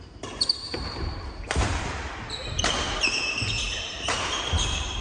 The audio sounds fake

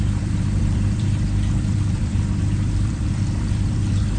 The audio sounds fake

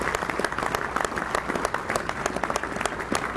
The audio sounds real